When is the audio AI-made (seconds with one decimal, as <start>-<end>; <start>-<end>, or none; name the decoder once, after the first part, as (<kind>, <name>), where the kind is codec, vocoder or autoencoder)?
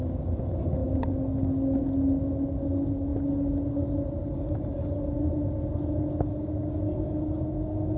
none